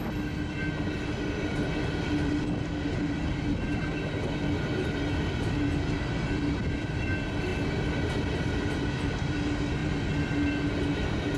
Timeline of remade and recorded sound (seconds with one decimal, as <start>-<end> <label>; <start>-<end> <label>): 0.0-11.4 recorded